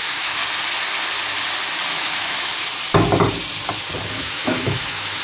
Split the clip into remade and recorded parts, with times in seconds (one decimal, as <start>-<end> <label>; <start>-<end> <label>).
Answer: 0.0-0.4 remade; 0.4-1.9 recorded; 1.9-2.5 remade; 2.5-4.1 recorded; 4.1-5.2 remade